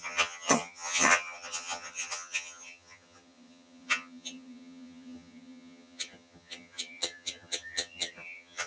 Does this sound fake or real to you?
fake